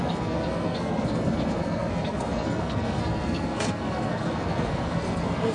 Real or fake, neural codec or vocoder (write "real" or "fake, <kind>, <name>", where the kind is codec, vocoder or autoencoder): fake, codec, SNAC